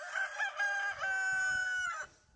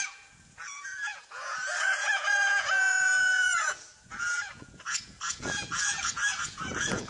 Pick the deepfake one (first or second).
second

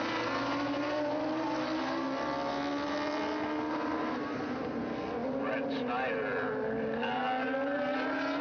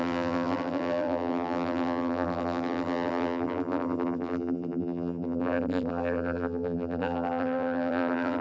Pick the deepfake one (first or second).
second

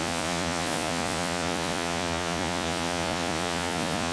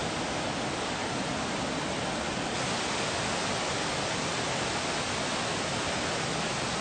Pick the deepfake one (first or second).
first